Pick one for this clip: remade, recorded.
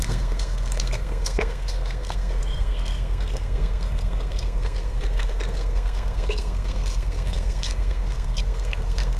remade